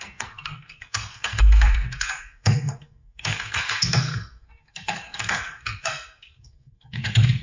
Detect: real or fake fake